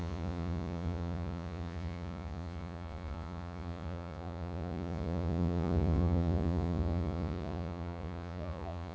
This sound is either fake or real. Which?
fake